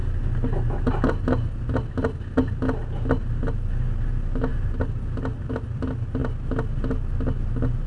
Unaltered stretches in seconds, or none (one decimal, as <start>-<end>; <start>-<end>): 0.0-7.9